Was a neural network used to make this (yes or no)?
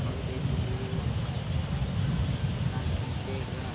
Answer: no